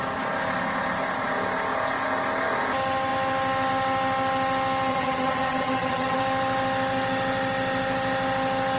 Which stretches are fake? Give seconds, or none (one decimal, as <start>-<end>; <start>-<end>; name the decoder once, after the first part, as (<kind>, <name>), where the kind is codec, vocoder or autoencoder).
4.9-6.2 (vocoder, HiFi-GAN)